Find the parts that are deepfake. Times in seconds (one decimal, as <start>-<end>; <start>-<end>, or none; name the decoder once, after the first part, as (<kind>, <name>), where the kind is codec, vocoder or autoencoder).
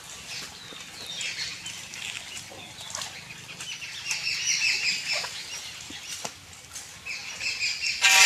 none